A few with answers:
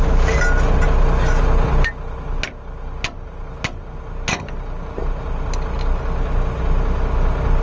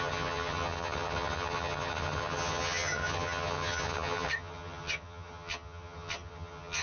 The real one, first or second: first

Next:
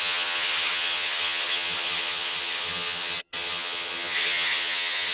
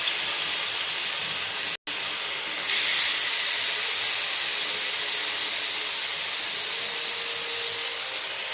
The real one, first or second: second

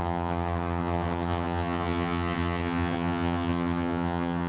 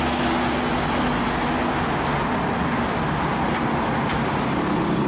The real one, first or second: second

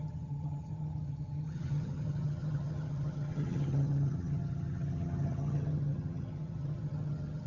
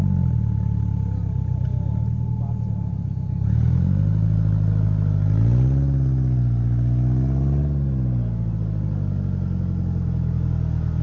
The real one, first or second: second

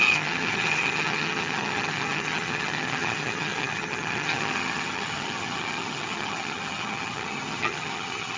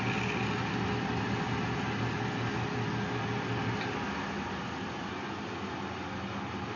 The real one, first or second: second